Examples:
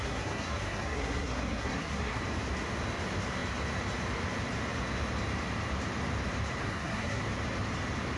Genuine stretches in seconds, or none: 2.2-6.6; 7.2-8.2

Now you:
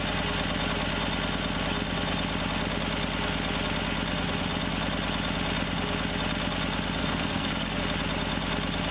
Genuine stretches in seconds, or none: 0.0-7.0; 7.8-8.9

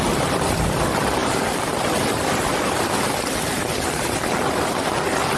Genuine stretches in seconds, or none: 0.0-5.4

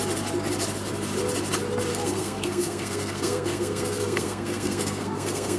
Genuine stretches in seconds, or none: 0.0-1.9

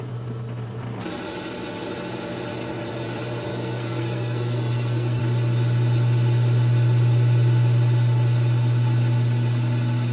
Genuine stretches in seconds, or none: 0.0-3.5; 5.2-10.1

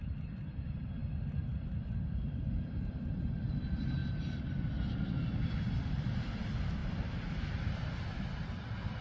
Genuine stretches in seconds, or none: 1.0-2.0